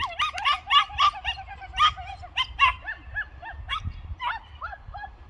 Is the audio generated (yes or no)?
no